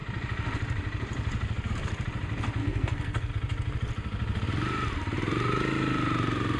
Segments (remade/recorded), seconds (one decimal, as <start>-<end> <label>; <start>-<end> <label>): 0.0-2.6 recorded; 2.6-3.3 remade; 3.3-6.6 recorded

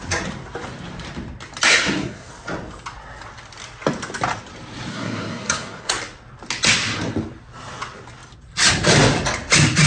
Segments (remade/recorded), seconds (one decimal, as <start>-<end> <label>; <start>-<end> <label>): 0.0-1.7 recorded; 1.7-2.3 remade; 2.3-4.9 recorded; 4.9-5.9 remade; 5.9-9.9 recorded

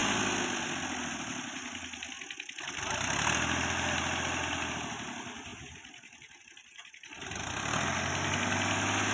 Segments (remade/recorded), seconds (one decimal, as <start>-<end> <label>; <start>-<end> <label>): 0.0-9.1 recorded

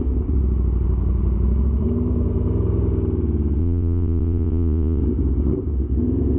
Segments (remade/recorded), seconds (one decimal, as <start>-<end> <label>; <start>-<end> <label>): 0.0-3.6 recorded; 3.6-5.0 remade; 5.0-6.4 recorded

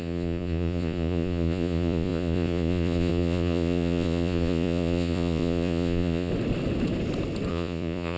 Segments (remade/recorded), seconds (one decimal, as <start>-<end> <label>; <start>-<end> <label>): 0.0-6.3 remade; 6.3-7.5 recorded; 7.5-8.2 remade

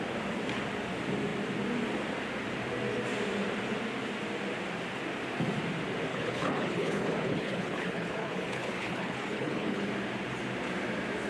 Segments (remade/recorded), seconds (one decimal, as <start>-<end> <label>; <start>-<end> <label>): 0.0-6.1 recorded; 6.1-9.9 remade; 9.9-11.3 recorded

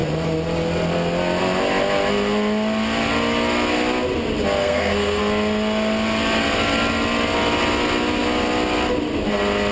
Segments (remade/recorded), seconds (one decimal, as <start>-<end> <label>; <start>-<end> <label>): 0.0-4.6 recorded; 4.6-5.2 remade; 5.2-9.7 recorded